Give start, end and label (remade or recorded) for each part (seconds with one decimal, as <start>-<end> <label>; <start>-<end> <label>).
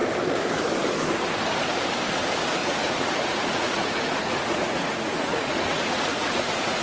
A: 0.0-2.6 recorded; 2.6-6.8 remade